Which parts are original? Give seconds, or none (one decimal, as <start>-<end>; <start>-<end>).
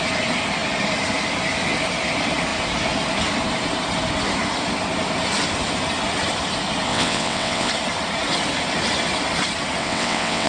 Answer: 0.0-6.9; 7.7-9.8